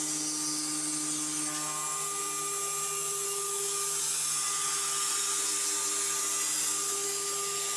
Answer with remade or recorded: recorded